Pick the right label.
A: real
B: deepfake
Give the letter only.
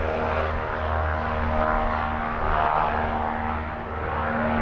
A